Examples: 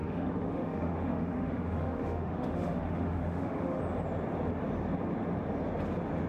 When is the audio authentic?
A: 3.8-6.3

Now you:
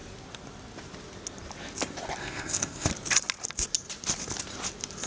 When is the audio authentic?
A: 0.0-2.2; 2.9-5.1

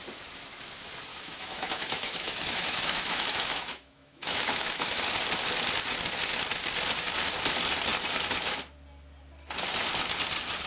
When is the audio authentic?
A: 0.0-1.1; 5.0-10.7

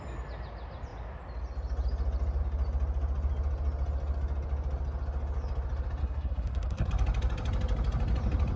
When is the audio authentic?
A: 0.0-6.0; 6.9-8.6